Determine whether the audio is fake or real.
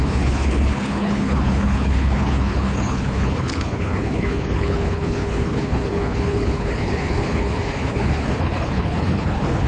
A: fake